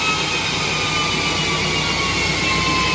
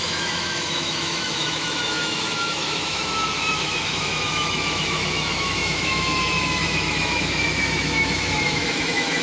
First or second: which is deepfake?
second